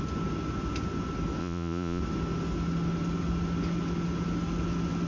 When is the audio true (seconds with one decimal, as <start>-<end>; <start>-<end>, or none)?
0.0-1.4; 2.0-5.1